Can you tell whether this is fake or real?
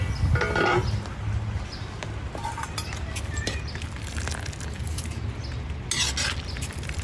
real